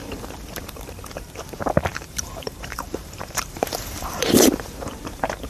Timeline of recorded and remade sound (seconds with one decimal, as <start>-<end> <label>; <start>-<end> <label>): 0.0-1.3 remade; 1.3-1.9 recorded; 1.9-5.5 remade